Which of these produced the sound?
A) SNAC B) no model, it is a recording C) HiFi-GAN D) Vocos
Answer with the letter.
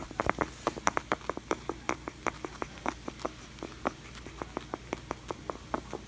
B